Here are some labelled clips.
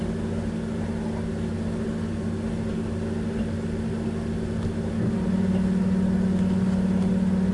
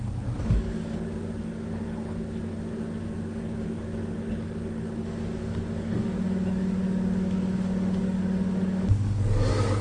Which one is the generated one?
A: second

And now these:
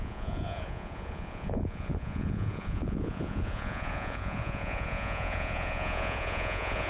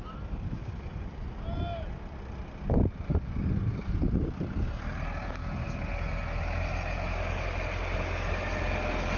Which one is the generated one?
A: first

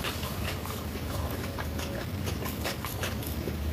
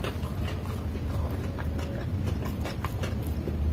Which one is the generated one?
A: first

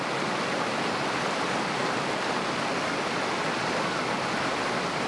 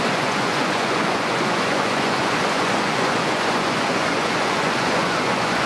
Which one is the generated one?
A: second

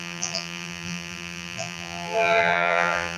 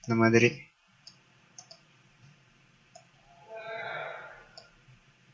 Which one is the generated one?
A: first